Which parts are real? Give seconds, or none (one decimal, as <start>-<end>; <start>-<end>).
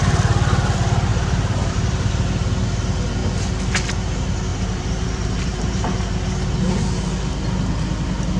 0.0-1.1; 2.1-4.5; 5.9-8.4